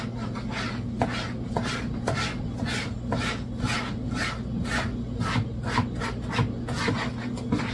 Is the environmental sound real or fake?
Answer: real